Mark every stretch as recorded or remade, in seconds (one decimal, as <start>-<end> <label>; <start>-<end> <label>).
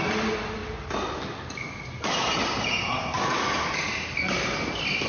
0.0-5.1 recorded